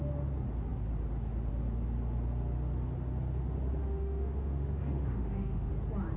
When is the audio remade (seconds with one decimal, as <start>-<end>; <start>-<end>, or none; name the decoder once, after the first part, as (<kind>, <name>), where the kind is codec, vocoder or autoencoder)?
3.8-5.7 (autoencoder, DAC-VAE)